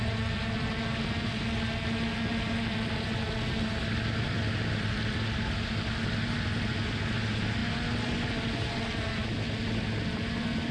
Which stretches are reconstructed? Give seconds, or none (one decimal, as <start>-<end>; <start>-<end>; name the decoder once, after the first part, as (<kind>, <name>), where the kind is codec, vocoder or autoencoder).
none